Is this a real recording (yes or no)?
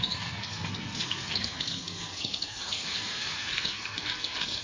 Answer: no